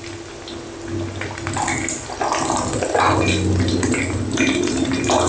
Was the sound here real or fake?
real